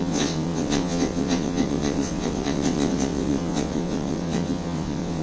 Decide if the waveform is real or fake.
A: fake